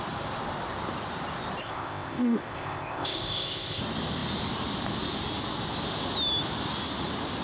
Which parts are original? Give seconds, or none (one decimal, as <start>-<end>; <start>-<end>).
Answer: 0.0-1.6; 3.8-7.4